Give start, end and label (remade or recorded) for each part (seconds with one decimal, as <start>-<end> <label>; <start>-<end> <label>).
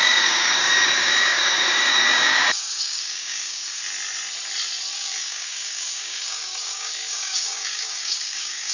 0.0-3.8 remade; 3.8-4.9 recorded; 4.9-8.7 remade